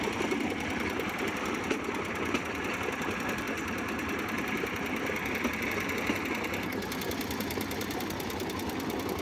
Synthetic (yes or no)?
no